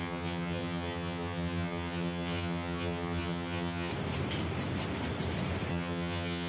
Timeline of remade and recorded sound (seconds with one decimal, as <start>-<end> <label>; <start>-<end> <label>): 0.0-3.9 remade; 3.9-5.7 recorded; 5.7-6.5 remade